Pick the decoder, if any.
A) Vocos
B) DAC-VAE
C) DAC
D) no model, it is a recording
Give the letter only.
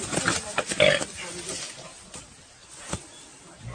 D